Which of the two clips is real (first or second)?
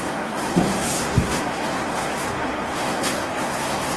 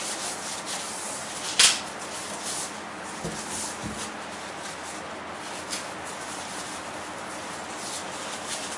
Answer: second